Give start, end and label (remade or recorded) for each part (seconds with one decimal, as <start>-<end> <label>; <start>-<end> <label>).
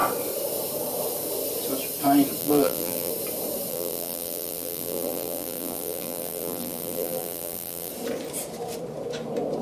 0.0-2.4 recorded; 2.4-3.1 remade; 3.1-3.7 recorded; 3.7-7.9 remade; 7.9-9.6 recorded